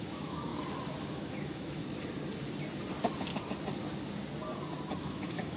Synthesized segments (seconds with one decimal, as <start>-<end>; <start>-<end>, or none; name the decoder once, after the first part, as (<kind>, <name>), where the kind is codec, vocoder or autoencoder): 0.0-0.5 (autoencoder, DAC-VAE); 1.1-1.8; 5.0-5.6